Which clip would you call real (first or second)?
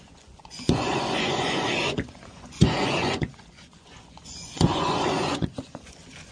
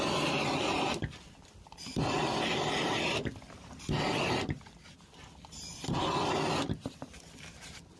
second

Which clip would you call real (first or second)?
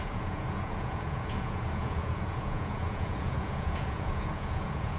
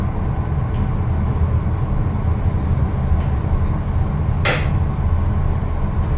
second